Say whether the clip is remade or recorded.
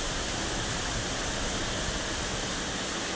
recorded